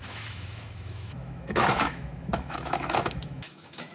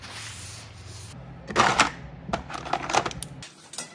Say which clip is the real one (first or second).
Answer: second